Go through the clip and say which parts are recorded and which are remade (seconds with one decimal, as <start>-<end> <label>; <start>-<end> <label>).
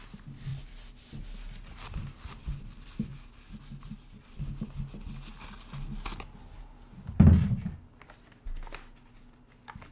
0.0-9.9 recorded